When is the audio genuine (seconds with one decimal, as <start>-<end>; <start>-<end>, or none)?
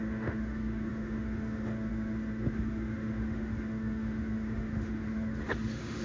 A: none